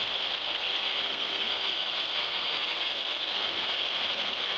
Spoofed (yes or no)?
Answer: yes